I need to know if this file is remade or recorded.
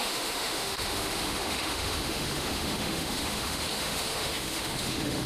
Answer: remade